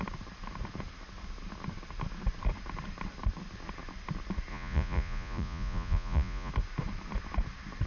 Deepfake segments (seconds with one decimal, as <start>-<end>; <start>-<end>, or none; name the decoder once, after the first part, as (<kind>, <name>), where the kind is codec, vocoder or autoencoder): 4.5-6.5 (vocoder, Vocos)